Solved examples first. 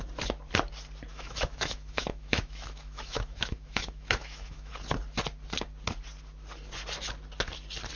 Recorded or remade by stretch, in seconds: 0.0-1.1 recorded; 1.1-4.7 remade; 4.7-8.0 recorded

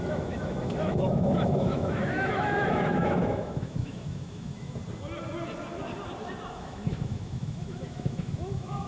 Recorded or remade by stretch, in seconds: 0.0-4.8 remade; 4.8-6.5 recorded; 6.5-8.9 remade

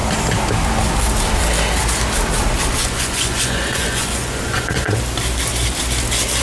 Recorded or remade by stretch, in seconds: 0.0-2.8 recorded; 2.8-5.0 remade; 5.0-6.4 recorded

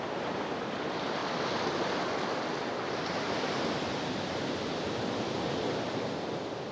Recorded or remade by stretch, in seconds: 0.0-6.7 recorded

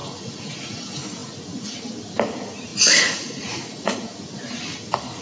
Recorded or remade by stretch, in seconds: 0.0-0.5 remade; 0.5-2.7 recorded; 2.7-4.0 remade; 4.0-5.2 recorded

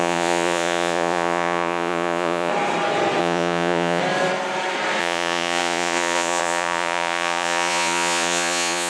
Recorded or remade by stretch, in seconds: 0.0-2.5 remade; 2.5-3.2 recorded; 3.2-4.0 remade; 4.0-5.0 recorded; 5.0-8.9 remade

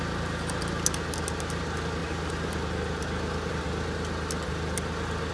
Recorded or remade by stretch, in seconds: 0.0-5.3 recorded